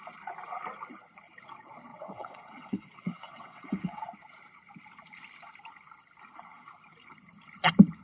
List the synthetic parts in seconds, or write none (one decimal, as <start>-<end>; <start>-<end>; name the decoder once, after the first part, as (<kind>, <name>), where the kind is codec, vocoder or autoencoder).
1.9-4.0 (vocoder, WaveNeXt)